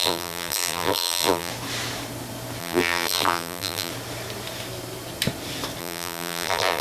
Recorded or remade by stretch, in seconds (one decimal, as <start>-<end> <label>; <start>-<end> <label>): 0.0-1.5 remade; 1.5-2.6 recorded; 2.6-3.9 remade; 3.9-5.8 recorded; 5.8-6.8 remade